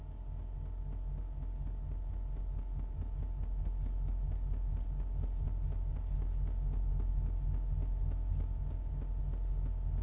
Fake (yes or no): no